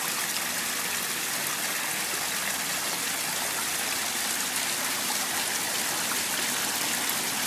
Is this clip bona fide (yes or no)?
yes